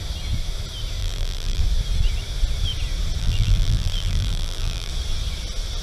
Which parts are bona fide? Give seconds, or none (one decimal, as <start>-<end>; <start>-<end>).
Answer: 0.0-1.0; 1.6-3.2; 4.9-5.8